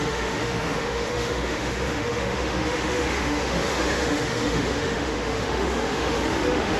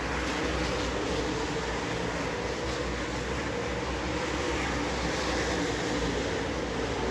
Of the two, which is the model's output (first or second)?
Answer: first